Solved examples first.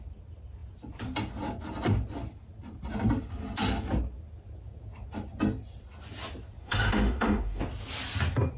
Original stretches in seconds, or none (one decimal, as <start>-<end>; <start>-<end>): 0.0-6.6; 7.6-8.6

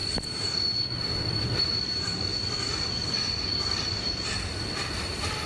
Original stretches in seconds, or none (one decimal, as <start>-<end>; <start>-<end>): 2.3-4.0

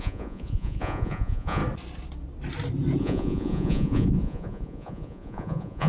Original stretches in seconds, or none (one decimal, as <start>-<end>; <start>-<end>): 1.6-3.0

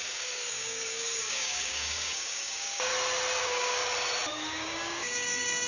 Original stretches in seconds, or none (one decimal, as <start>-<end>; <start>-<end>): 2.9-3.4; 3.8-4.3

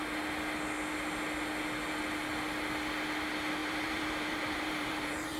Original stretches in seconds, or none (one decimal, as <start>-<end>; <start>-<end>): 0.0-3.6